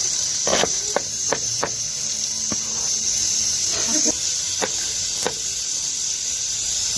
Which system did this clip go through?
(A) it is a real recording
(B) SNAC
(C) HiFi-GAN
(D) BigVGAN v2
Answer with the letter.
A